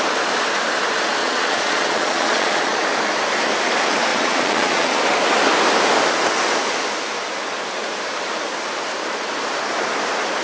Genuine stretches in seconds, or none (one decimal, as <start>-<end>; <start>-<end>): 0.0-1.2; 2.8-4.1; 5.0-10.4